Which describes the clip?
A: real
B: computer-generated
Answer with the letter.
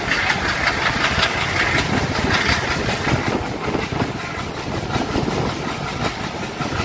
A